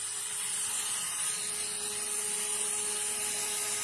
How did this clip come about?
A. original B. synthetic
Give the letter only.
A